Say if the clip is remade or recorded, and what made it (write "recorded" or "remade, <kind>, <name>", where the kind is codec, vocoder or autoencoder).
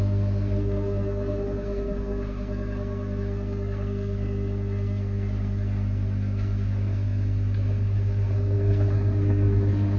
remade, codec, SNAC